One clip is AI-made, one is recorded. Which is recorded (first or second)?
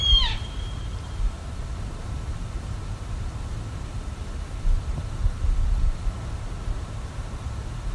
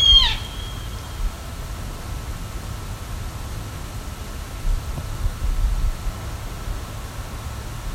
second